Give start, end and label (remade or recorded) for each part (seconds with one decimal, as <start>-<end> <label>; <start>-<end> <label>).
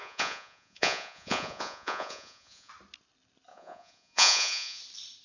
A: 0.0-2.7 remade; 2.7-3.5 recorded; 3.5-4.8 remade; 4.8-5.2 recorded